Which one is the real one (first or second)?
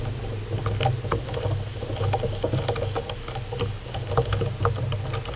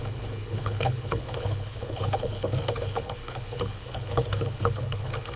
first